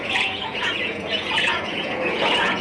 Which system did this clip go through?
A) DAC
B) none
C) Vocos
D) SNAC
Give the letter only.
C